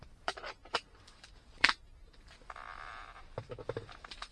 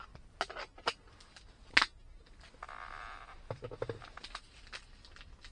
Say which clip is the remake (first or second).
first